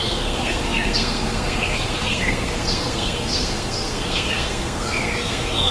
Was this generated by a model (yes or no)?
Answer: yes